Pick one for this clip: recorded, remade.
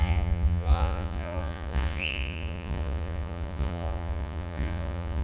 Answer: remade